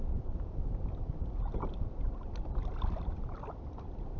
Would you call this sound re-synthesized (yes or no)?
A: no